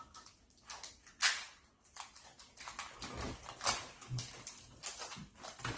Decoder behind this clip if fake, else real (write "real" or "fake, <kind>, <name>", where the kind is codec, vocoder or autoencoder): real